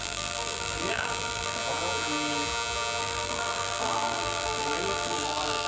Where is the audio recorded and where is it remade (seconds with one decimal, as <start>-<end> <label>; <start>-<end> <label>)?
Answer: 0.0-1.6 remade; 1.6-3.0 recorded; 3.0-5.7 remade